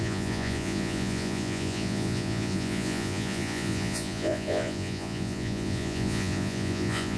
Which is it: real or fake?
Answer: fake